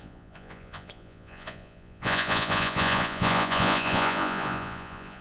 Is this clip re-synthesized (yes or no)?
yes